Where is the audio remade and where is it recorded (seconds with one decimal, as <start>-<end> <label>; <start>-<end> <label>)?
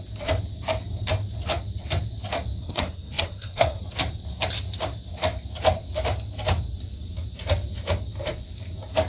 0.0-2.6 recorded; 2.6-3.8 remade; 3.8-9.1 recorded